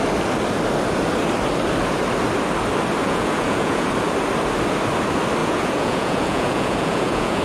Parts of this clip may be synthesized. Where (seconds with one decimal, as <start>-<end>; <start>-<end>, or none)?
3.0-3.9; 5.4-7.4